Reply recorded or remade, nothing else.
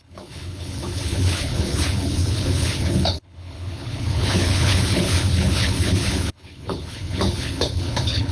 remade